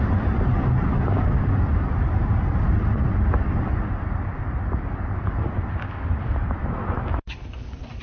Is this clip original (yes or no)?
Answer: yes